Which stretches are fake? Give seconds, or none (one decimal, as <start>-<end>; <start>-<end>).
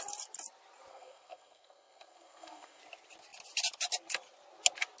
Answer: 0.9-2.8